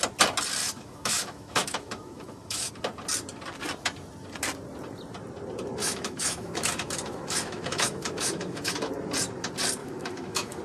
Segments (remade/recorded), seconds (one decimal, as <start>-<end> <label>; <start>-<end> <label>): 0.0-0.6 recorded; 0.6-2.7 remade; 2.7-5.8 recorded; 5.8-8.9 remade; 8.9-9.8 recorded; 9.8-10.6 remade